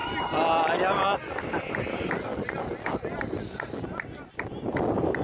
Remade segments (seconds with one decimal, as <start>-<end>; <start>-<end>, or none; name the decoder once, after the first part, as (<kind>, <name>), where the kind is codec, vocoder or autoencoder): none